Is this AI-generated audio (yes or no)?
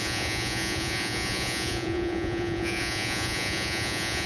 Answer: yes